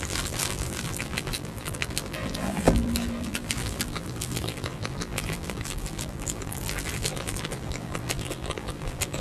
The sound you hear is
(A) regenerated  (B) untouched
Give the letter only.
A